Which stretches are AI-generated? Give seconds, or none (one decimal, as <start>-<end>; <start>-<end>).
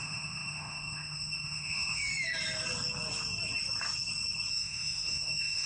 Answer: 0.0-2.1; 4.5-5.7